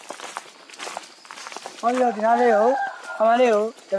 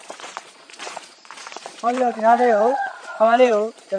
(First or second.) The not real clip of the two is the second